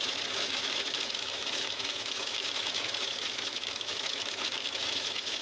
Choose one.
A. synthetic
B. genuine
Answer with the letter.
A